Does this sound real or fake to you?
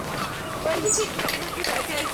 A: real